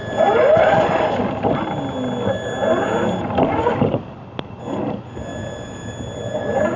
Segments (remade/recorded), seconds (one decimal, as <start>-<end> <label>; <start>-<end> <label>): 0.0-6.8 recorded